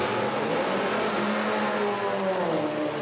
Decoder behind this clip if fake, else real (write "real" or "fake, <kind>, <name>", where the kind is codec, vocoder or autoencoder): real